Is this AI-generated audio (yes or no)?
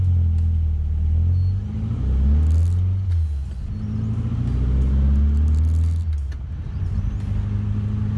no